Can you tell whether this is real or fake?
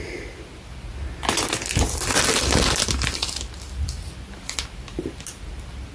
real